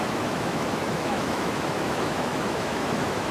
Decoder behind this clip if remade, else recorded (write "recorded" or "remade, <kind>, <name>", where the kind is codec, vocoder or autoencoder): remade, autoencoder, DAC-VAE